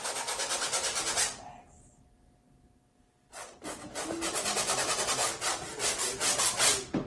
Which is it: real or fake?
real